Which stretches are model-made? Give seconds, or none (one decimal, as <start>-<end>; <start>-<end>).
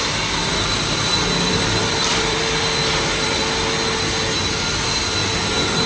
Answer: 0.4-3.4